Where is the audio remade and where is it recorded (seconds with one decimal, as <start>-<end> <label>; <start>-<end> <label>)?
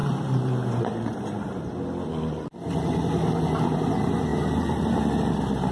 0.0-1.7 remade; 1.7-4.3 recorded; 4.3-5.0 remade; 5.0-5.7 recorded